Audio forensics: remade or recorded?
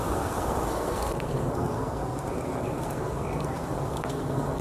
remade